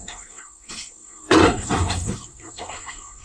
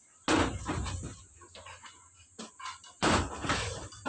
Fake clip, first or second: first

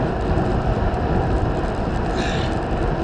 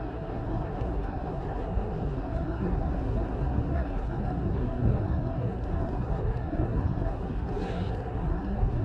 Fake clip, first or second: second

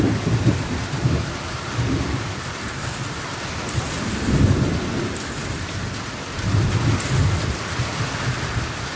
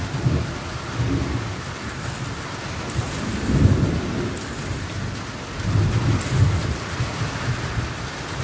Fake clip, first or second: first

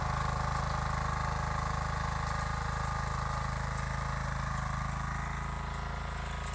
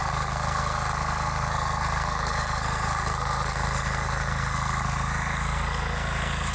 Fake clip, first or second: second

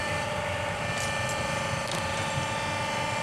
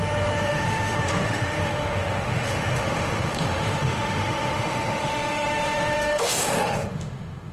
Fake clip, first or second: second